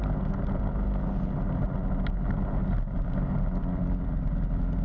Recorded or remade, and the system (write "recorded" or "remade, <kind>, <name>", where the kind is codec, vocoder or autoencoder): recorded